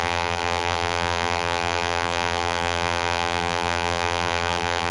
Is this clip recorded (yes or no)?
no